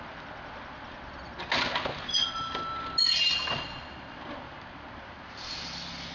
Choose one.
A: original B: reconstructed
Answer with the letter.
A